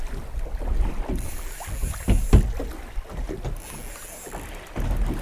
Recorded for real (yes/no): yes